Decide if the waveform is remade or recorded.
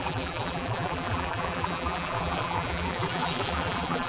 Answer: remade